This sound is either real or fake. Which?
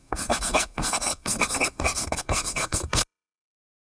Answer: fake